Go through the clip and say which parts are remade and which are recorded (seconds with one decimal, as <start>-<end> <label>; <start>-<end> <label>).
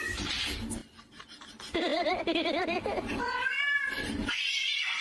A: 0.0-1.9 recorded; 1.9-5.0 remade